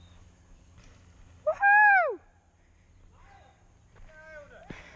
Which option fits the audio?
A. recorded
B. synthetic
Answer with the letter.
A